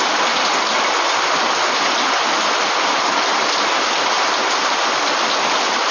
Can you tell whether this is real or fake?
real